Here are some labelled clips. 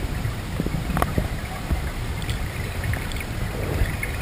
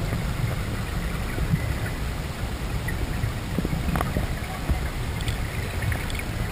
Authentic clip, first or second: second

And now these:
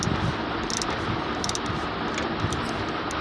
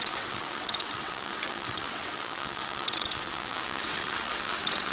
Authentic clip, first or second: first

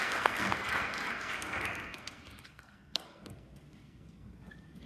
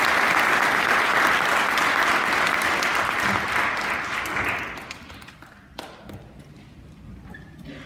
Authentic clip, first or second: second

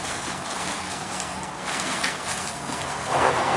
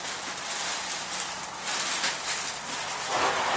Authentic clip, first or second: second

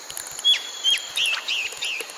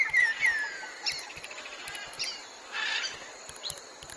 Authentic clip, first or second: first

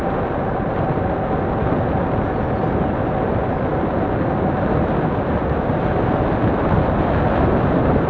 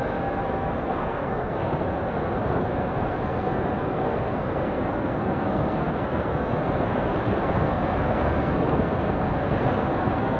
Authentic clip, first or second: first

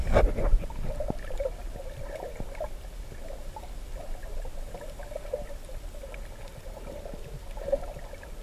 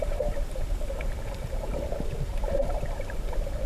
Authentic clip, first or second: first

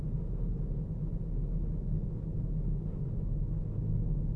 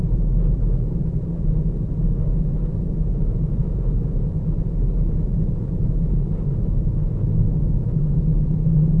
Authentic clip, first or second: first